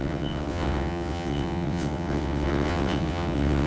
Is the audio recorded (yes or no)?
no